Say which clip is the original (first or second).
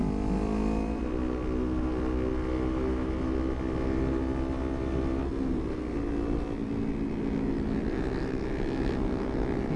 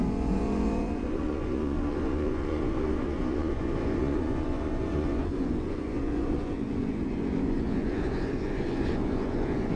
first